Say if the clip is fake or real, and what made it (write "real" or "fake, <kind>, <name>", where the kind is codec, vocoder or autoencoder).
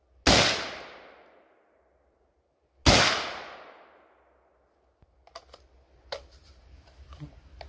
real